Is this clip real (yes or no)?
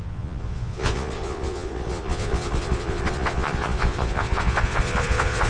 no